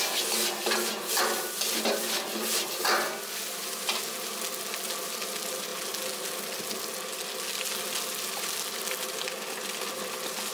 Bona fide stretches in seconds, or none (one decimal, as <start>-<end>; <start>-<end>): 0.0-10.5